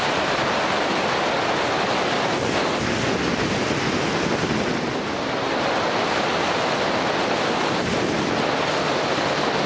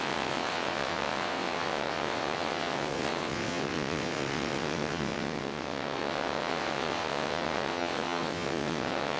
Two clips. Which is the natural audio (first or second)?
first